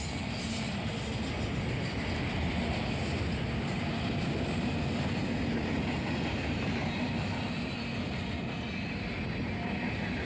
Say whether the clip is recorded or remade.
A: recorded